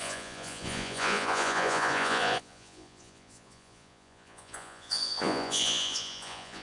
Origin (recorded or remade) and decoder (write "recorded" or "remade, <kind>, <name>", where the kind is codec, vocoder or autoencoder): remade, vocoder, Vocos